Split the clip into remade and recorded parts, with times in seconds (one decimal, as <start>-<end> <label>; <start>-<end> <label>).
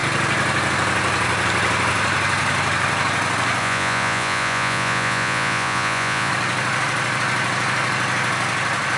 0.0-3.6 recorded; 3.6-6.3 remade; 6.3-9.0 recorded